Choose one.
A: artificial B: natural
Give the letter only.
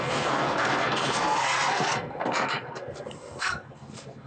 A